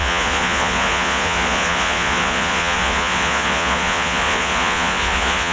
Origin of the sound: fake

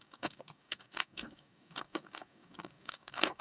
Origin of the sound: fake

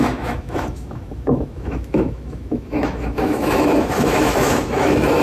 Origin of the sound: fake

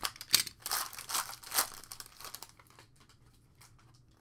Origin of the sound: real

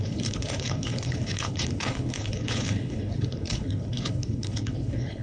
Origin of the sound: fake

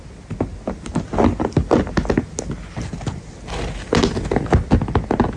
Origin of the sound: real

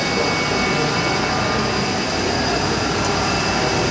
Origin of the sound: real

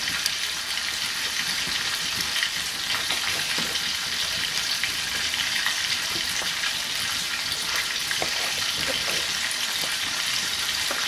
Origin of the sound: fake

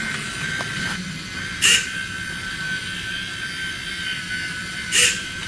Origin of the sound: real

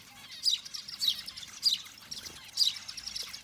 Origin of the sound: real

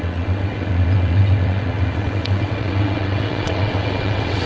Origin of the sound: fake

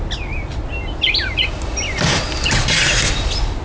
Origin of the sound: real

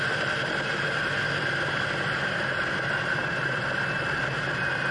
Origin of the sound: real